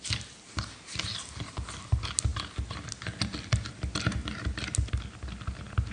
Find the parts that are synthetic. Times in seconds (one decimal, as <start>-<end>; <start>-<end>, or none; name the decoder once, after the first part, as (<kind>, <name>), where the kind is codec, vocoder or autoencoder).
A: none

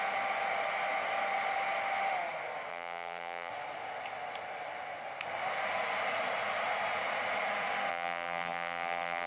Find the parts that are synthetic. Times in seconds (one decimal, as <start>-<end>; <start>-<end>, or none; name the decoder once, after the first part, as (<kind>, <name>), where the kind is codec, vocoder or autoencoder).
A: 2.7-3.5 (vocoder, BigVGAN v2); 7.9-9.3

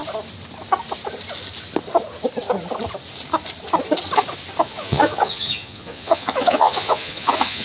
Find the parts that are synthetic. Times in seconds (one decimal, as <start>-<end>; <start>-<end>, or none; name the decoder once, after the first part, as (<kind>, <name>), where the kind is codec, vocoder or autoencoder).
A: 4.6-7.6 (vocoder, Vocos)

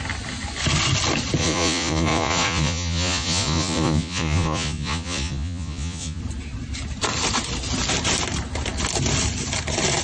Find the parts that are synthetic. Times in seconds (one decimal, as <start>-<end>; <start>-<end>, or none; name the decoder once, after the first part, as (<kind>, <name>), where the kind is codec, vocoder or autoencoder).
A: 1.4-6.2 (vocoder, Vocos)

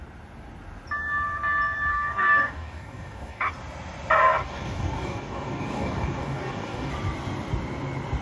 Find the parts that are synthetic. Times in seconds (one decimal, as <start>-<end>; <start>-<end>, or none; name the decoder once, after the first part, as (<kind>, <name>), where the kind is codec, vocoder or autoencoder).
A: 1.9-3.5 (codec, DAC); 4.4-6.9

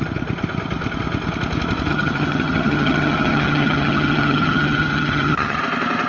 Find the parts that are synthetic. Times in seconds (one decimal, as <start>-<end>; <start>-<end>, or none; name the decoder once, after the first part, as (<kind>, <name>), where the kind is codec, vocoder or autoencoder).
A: 1.9-5.6 (vocoder, HiFi-GAN)

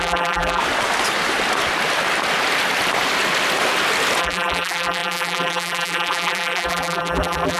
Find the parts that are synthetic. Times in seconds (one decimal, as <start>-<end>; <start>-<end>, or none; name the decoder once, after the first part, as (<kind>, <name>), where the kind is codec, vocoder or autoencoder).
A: 0.0-0.6 (vocoder, BigVGAN v2); 4.2-7.6